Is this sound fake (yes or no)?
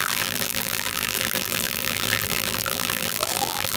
yes